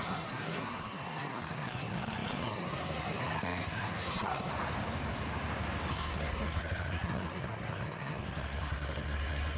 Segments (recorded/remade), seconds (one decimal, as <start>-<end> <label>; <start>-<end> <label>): 0.0-4.5 remade; 4.5-5.9 recorded; 5.9-9.6 remade